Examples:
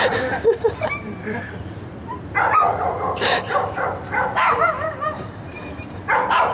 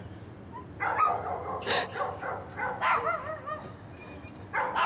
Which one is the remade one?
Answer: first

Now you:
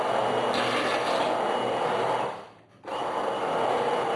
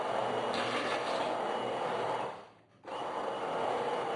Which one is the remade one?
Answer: second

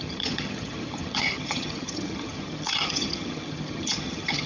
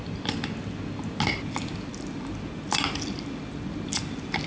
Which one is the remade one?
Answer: first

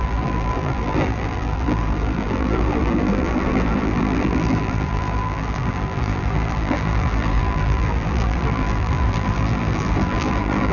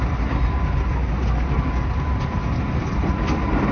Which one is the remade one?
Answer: first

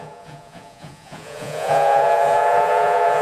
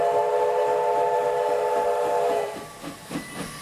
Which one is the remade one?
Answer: first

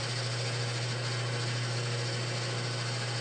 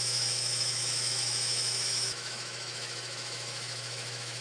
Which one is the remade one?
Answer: second